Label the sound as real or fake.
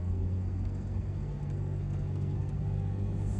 fake